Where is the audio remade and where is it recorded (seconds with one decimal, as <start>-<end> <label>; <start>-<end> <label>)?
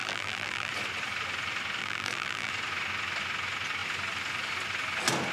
0.0-0.7 remade; 0.7-1.8 recorded; 1.8-2.5 remade; 2.5-5.3 recorded